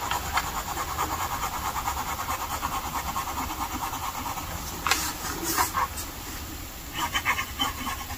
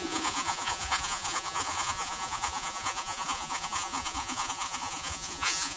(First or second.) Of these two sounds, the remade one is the second